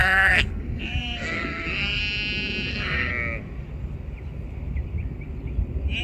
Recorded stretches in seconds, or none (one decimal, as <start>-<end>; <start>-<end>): 2.0-2.7; 3.1-6.0